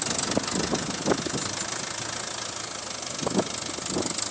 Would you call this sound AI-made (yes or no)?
no